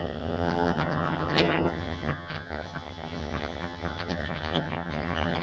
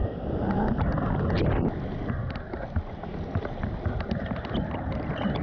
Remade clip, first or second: first